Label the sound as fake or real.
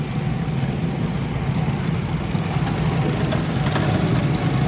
real